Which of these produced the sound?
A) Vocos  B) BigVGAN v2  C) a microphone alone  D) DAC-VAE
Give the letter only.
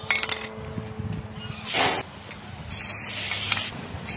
C